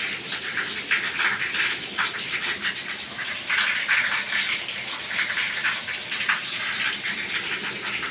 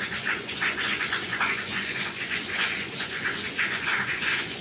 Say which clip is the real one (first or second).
first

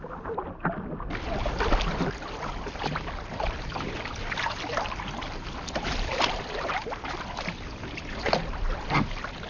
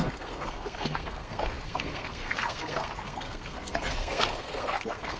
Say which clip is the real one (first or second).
first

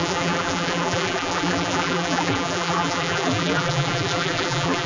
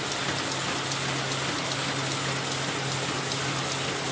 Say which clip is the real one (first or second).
second